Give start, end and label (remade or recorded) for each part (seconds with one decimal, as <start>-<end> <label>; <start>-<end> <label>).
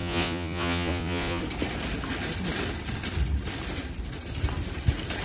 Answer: 0.0-1.4 remade; 1.4-5.2 recorded